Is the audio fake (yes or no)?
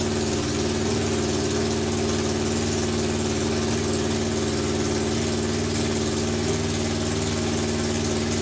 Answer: no